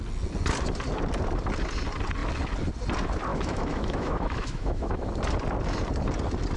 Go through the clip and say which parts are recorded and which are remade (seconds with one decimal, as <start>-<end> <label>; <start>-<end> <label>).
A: 0.0-3.3 recorded; 3.3-5.1 remade; 5.1-6.6 recorded